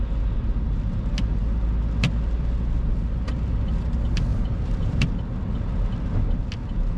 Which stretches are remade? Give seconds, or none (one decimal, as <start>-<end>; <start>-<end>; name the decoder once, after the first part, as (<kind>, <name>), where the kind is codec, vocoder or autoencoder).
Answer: 4.3-5.0 (vocoder, BigVGAN v2)